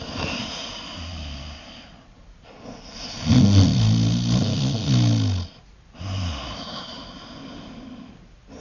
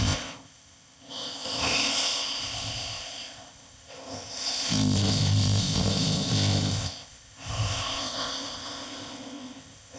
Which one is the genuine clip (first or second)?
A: first